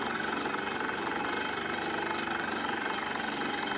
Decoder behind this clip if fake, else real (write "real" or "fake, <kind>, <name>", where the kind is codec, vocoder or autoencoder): real